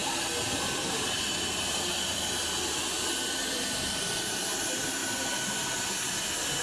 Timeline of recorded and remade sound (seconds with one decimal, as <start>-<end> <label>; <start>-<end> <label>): 0.0-6.6 recorded